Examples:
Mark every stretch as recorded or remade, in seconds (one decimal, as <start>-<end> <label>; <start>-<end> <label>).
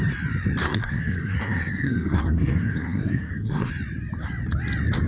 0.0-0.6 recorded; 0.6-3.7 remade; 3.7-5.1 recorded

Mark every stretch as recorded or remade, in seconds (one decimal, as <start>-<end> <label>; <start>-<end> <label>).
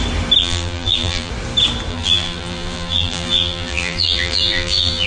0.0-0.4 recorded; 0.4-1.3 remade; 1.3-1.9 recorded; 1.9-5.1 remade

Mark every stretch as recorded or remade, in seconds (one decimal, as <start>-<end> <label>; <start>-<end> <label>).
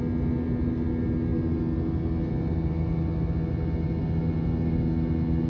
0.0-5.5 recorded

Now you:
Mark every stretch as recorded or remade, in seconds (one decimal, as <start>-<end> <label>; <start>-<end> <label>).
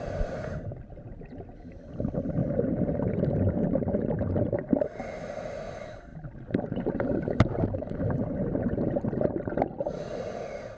0.0-2.4 recorded; 2.4-4.4 remade; 4.4-6.1 recorded; 6.1-9.6 remade; 9.6-10.8 recorded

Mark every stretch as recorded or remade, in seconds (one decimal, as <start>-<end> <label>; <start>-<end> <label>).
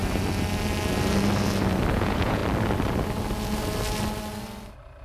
0.0-1.9 recorded; 1.9-2.4 remade; 2.4-5.0 recorded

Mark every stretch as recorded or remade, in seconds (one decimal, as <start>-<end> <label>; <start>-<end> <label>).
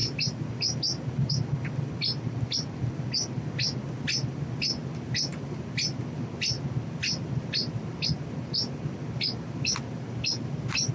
0.0-10.9 recorded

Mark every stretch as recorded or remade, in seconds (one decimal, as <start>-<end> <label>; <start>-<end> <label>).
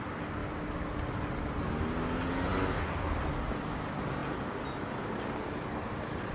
0.0-6.3 recorded